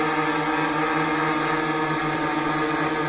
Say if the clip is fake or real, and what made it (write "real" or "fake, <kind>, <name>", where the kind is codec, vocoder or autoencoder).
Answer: real